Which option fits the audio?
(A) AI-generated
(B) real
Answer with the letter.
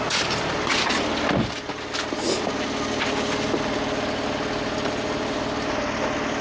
B